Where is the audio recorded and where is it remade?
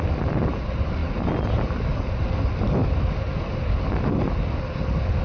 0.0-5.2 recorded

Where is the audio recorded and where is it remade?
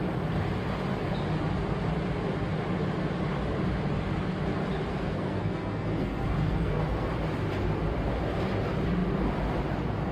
0.0-4.9 recorded; 4.9-7.1 remade; 7.1-10.1 recorded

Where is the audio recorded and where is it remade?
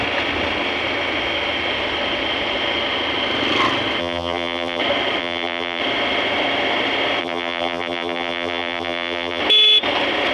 0.0-4.0 recorded; 4.0-4.8 remade; 4.8-5.2 recorded; 5.2-5.8 remade; 5.8-7.2 recorded; 7.2-9.4 remade; 9.4-10.3 recorded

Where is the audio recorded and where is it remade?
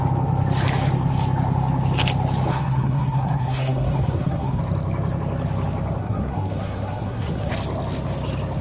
0.0-2.5 recorded; 2.5-4.6 remade; 4.6-6.0 recorded; 6.0-7.5 remade; 7.5-8.6 recorded